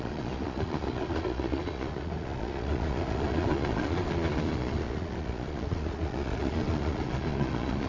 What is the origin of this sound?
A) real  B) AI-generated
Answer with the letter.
B